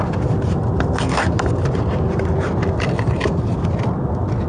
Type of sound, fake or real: real